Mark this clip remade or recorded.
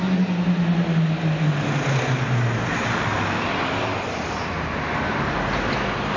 recorded